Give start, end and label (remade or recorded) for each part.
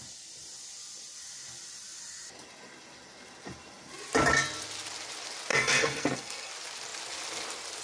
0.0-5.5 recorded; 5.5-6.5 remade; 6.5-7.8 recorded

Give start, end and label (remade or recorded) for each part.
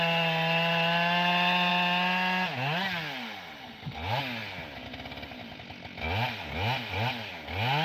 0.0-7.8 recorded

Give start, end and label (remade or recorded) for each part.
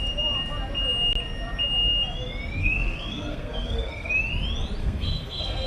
0.0-2.6 recorded; 2.6-4.1 remade; 4.1-4.8 recorded; 4.8-5.7 remade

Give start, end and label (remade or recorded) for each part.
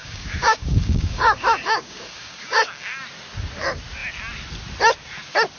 0.0-3.0 remade; 3.0-5.6 recorded